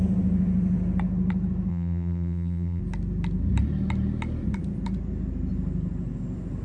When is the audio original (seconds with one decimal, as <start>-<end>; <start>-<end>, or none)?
0.0-1.7; 2.8-6.6